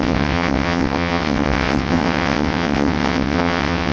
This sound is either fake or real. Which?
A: fake